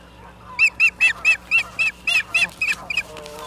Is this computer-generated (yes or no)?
no